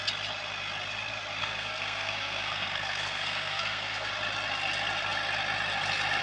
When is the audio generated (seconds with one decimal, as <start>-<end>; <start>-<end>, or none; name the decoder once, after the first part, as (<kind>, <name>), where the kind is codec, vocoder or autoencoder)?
1.4-4.1 (codec, SNAC)